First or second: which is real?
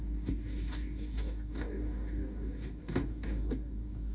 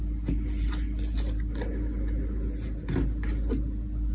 second